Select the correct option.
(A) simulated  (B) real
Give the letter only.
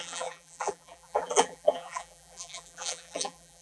A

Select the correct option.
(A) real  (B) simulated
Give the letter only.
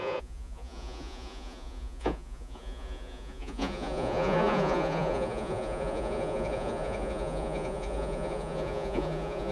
B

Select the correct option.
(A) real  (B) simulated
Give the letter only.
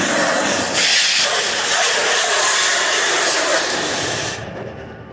A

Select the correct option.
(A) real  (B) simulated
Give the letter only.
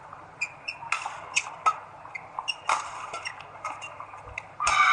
A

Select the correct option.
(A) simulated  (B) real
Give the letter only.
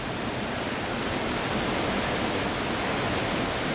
A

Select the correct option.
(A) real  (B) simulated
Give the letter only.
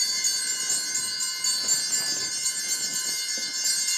A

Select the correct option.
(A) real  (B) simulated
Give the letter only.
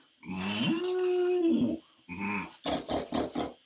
A